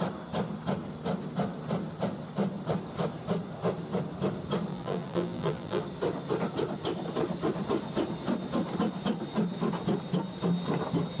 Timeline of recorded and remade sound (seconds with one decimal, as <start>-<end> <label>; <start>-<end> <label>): 0.0-4.7 recorded; 4.7-5.8 remade; 5.8-11.2 recorded